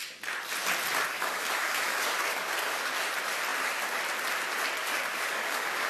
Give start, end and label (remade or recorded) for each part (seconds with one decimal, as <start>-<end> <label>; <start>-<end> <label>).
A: 0.0-1.1 recorded; 1.1-2.9 remade; 2.9-4.8 recorded; 4.8-5.9 remade